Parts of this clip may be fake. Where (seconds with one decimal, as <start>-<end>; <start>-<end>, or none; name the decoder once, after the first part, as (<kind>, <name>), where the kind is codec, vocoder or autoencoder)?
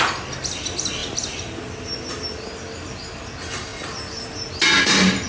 none